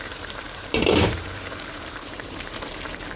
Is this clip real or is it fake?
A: fake